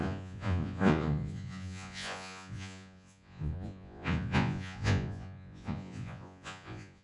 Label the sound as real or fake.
fake